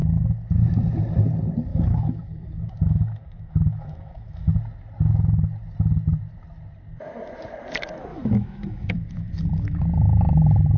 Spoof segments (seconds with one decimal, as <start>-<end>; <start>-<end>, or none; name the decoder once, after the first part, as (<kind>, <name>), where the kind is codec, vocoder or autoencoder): 1.7-4.5 (autoencoder, DAC-VAE); 8.1-9.8